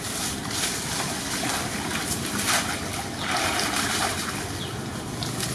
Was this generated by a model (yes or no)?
no